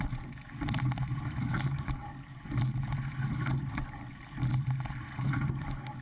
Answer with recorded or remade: recorded